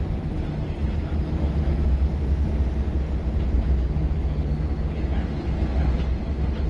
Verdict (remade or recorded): recorded